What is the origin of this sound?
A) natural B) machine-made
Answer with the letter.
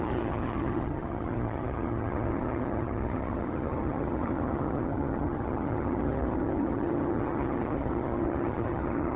B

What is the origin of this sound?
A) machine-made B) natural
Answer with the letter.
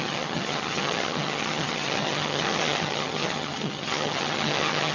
A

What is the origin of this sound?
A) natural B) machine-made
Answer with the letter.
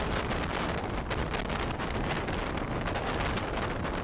A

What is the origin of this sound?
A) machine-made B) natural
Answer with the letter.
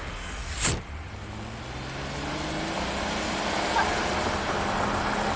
B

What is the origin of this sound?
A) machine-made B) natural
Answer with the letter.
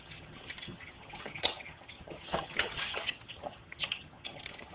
A